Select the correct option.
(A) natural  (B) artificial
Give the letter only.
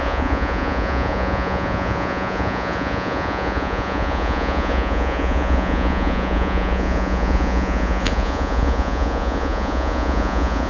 B